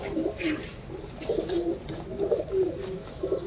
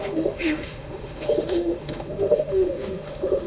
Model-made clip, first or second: second